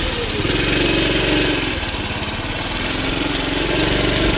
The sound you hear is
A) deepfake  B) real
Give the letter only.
B